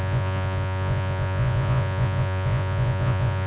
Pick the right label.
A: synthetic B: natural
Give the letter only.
A